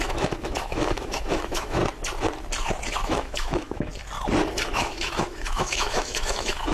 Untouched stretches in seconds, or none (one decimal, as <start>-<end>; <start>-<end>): 1.8-2.9; 3.9-4.7